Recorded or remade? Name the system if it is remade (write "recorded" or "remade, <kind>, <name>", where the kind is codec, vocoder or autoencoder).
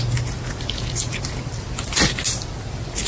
recorded